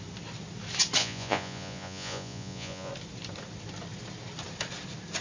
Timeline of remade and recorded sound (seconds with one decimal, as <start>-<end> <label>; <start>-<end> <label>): 0.0-1.0 recorded; 1.0-2.9 remade; 2.9-5.2 recorded